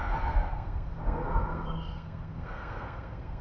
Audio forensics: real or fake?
fake